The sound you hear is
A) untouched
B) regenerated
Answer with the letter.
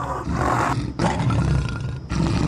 A